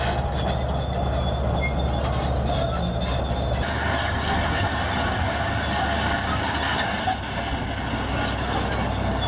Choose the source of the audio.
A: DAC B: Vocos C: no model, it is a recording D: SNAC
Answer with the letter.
C